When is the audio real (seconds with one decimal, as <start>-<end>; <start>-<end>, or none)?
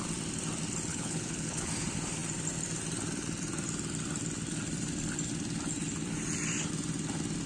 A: 0.0-0.9; 1.7-7.5